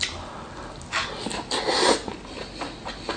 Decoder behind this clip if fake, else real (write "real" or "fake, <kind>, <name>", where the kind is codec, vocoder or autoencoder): real